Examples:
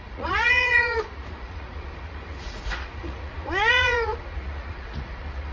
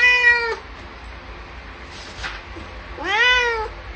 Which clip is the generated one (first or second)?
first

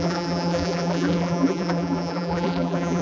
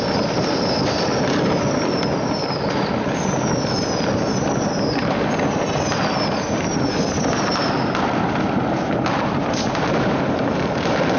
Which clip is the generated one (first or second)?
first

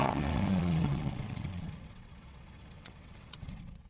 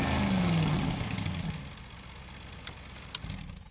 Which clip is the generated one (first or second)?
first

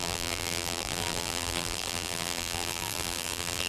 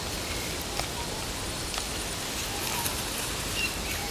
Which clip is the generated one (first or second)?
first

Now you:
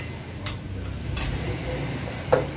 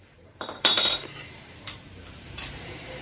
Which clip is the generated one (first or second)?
second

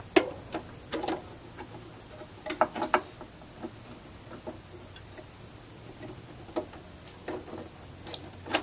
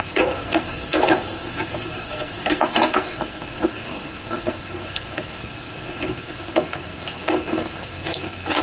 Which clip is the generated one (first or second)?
second